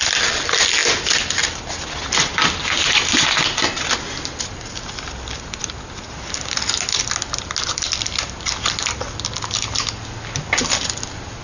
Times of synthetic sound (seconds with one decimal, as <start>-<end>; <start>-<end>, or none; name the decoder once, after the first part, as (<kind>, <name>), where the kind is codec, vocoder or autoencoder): none